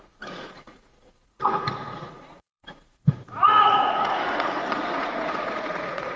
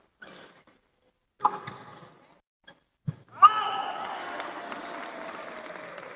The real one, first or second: second